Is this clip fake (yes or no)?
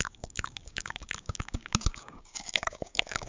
yes